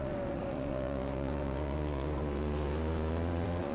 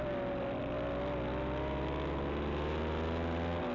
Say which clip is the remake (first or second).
first